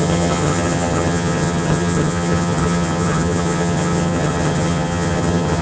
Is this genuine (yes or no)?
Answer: no